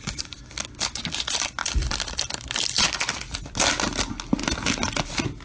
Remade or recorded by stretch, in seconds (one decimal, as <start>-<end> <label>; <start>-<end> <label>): 0.0-5.4 recorded